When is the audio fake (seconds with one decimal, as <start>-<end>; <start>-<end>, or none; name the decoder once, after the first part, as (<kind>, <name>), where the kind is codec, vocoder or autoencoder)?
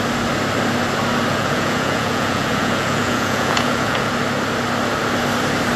1.3-4.1 (vocoder, Vocos)